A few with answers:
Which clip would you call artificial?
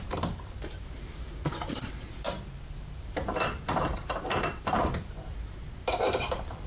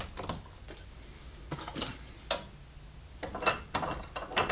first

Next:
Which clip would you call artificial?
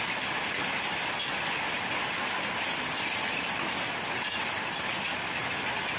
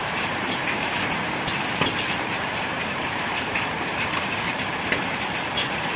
second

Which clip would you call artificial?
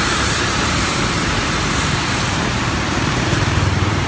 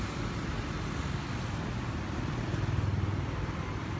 first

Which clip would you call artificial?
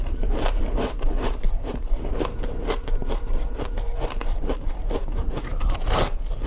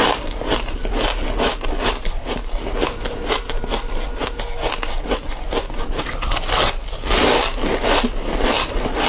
first